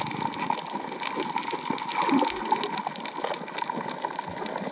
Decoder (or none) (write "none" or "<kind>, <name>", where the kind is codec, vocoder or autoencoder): none